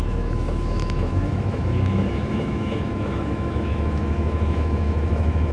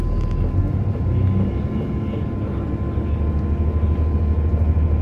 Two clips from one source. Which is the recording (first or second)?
second